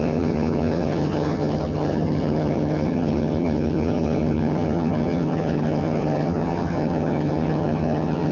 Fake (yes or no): yes